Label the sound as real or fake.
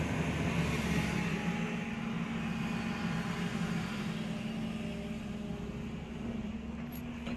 real